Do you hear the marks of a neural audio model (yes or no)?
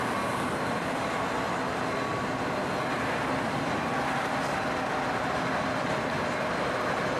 no